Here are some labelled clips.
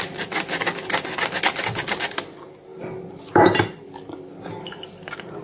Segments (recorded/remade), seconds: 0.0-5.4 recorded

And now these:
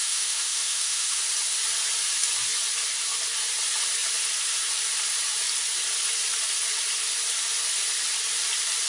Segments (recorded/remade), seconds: 0.0-1.2 remade; 1.2-8.9 recorded

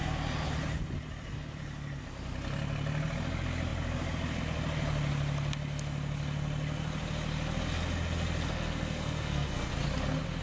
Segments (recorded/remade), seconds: 0.0-8.5 recorded; 8.5-9.7 remade; 9.7-10.4 recorded

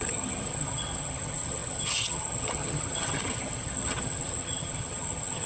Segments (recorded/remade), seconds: 0.0-5.5 remade

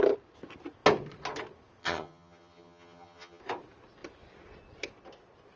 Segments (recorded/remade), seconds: 0.0-1.8 recorded; 1.8-3.4 remade; 3.4-5.6 recorded

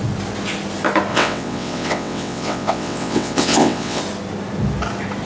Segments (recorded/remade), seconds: 0.0-1.1 recorded; 1.1-4.0 remade; 4.0-5.3 recorded